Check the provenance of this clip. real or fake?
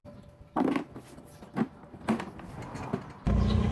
real